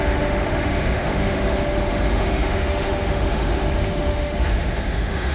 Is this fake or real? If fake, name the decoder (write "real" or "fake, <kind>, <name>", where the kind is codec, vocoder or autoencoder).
fake, autoencoder, DAC-VAE